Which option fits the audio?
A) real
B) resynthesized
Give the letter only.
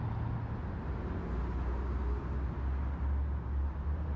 A